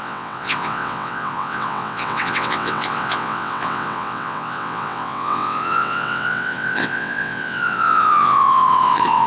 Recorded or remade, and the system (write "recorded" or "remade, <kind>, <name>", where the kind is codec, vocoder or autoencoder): remade, vocoder, WaveNeXt